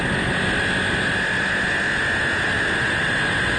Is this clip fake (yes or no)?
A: no